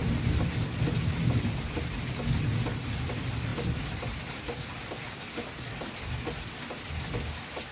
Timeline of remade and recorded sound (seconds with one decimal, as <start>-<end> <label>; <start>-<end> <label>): 0.0-7.7 recorded